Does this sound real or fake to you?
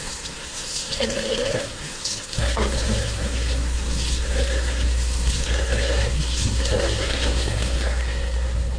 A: fake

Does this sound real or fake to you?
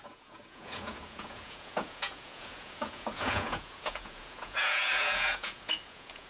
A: fake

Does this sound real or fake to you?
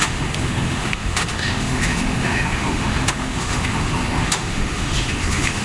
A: fake